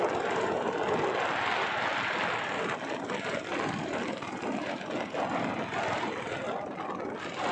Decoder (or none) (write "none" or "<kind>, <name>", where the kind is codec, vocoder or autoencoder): none